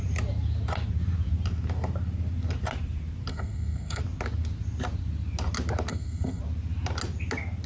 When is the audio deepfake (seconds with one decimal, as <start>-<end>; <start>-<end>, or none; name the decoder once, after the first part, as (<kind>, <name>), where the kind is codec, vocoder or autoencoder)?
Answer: 3.3-4.0 (codec, SNAC); 5.9-6.4